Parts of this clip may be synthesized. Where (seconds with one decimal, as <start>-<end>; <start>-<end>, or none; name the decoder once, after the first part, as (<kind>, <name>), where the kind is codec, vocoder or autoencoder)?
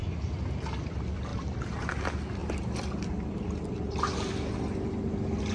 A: 0.0-0.9 (vocoder, BigVGAN v2); 1.3-1.9; 2.4-3.3